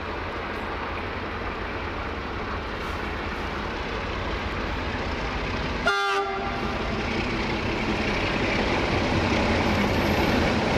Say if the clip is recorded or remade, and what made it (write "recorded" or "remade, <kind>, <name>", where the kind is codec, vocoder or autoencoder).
recorded